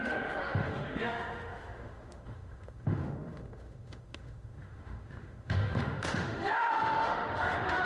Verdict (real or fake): fake